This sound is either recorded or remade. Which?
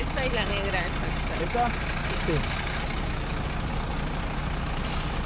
recorded